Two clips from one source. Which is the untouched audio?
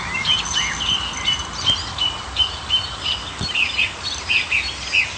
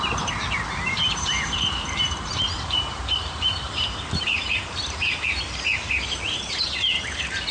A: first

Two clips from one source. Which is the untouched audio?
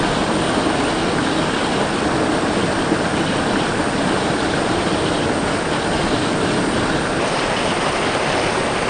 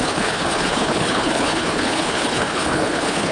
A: first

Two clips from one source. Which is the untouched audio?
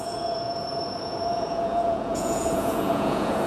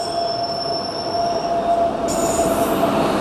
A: second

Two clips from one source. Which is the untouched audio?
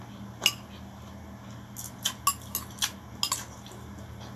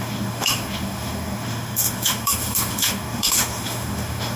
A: first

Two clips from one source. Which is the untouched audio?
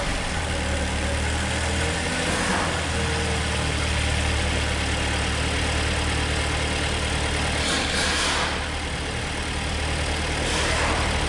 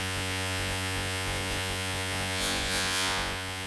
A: first